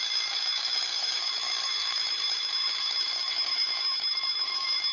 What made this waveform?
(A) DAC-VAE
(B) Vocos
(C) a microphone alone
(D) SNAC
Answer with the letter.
A